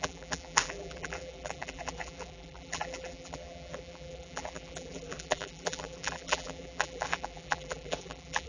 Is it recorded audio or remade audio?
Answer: remade